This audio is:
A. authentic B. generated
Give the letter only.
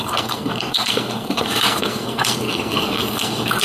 B